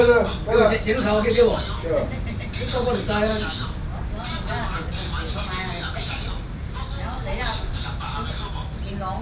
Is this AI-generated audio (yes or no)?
no